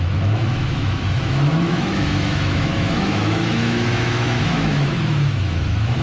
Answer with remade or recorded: remade